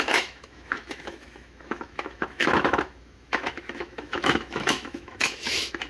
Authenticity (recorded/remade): remade